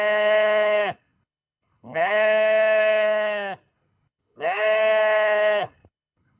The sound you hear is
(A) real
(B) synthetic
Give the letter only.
B